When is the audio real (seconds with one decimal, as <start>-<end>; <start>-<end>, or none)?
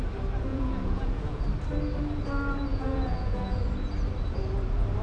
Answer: 0.0-0.5; 1.4-2.7; 3.6-5.0